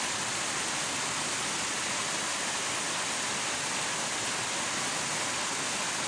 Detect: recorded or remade recorded